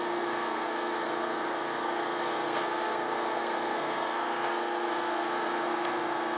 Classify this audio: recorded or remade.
remade